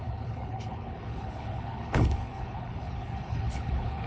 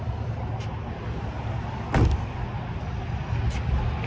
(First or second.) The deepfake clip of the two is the first